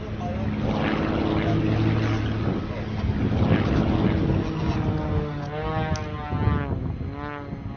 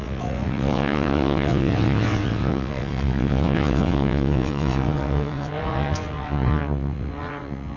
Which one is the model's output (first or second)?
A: second